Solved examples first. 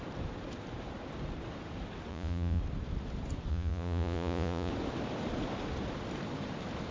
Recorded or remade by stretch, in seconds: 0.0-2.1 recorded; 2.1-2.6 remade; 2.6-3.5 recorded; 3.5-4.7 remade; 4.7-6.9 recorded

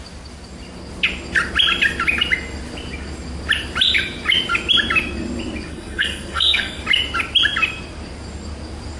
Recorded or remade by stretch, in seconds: 0.0-5.7 recorded; 5.7-6.8 remade; 6.8-9.0 recorded

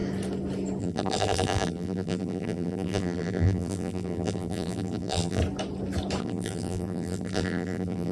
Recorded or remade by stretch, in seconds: 0.0-0.8 recorded; 0.8-5.4 remade; 5.4-6.2 recorded; 6.2-8.1 remade